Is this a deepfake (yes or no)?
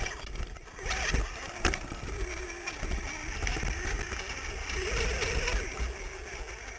no